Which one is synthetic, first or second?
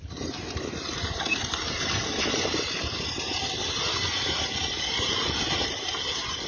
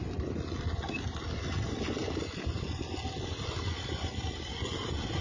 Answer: first